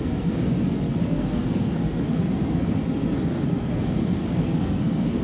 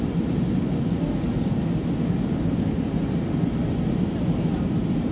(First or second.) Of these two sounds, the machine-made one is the first